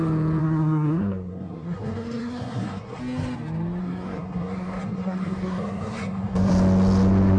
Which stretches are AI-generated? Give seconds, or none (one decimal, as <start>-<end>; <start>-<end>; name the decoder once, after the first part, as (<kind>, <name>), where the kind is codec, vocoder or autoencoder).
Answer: 0.4-3.0 (codec, SNAC); 3.8-6.5